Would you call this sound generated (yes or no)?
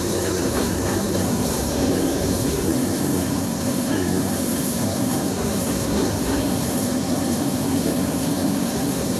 yes